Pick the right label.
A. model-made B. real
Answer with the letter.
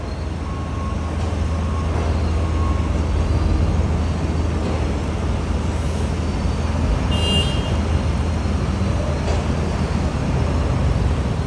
B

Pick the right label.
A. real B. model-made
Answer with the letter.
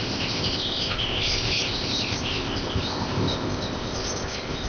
B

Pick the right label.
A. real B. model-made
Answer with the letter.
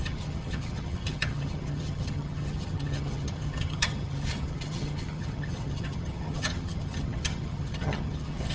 B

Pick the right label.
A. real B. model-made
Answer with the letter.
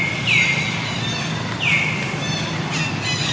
A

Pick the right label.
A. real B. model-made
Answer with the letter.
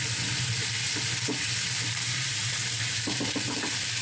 A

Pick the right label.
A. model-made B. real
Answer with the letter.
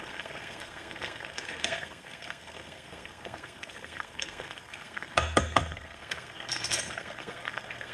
A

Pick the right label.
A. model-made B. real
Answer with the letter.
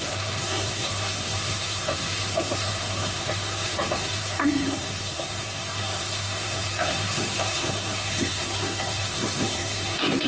A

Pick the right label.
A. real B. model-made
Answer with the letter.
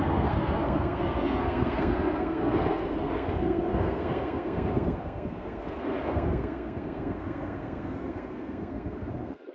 B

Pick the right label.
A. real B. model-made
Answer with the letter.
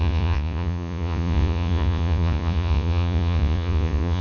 B